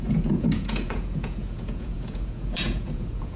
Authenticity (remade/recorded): remade